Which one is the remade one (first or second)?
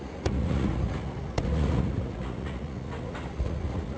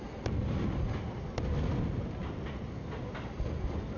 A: first